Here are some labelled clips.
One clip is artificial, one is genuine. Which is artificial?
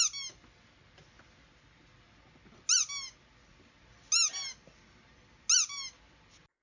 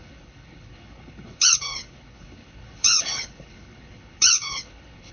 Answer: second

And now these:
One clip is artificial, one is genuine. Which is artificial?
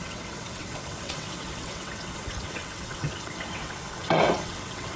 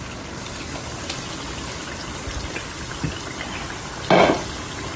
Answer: first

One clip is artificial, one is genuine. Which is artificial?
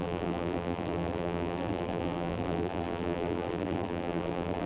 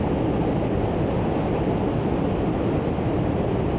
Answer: first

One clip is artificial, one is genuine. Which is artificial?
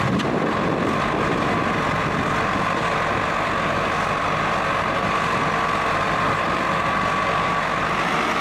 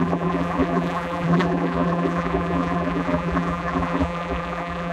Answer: second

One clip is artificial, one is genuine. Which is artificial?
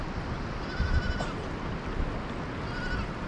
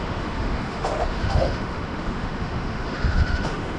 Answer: second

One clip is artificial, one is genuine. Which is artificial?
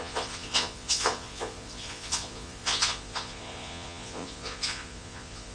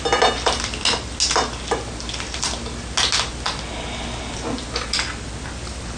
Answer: first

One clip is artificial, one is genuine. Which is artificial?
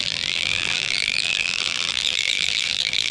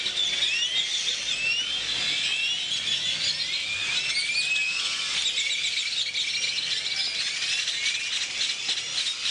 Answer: first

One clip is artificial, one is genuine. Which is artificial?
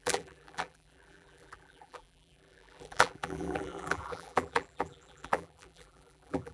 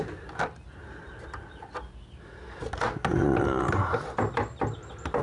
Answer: first